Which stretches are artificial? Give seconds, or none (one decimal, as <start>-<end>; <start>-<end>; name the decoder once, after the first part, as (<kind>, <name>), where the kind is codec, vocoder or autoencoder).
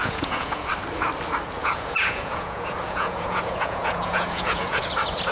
0.0-0.7 (vocoder, Vocos); 1.6-4.8